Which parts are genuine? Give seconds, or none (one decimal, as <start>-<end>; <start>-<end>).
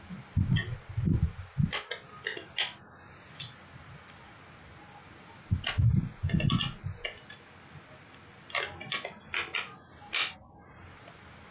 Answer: 0.0-11.5